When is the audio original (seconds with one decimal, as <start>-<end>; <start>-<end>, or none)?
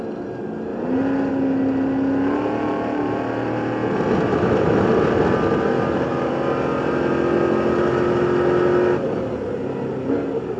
0.0-10.6